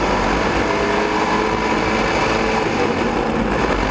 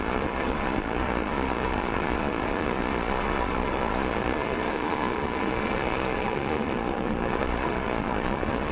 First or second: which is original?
first